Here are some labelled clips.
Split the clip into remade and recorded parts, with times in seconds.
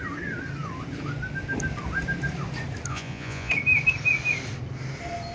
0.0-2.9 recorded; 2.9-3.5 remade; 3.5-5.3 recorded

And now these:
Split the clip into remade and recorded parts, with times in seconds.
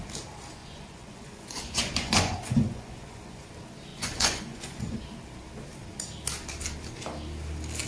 0.0-0.6 recorded; 0.6-3.5 remade; 3.5-3.9 recorded; 3.9-5.0 remade; 5.0-7.9 recorded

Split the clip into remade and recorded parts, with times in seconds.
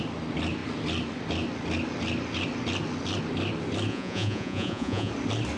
0.0-3.9 recorded; 3.9-5.1 remade; 5.1-5.6 recorded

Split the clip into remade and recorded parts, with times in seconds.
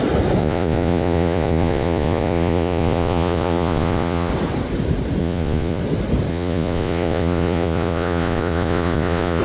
0.0-0.4 recorded; 0.4-4.3 remade; 4.3-5.2 recorded; 5.2-5.8 remade; 5.8-6.3 recorded; 6.3-9.4 remade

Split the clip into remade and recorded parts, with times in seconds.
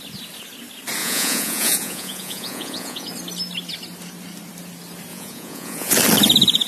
0.0-1.0 recorded; 1.0-3.1 remade; 3.1-5.1 recorded; 5.1-5.9 remade; 5.9-6.7 recorded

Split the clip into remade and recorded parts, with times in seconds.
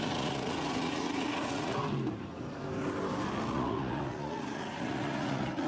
0.0-1.8 remade; 1.8-3.5 recorded; 3.5-5.7 remade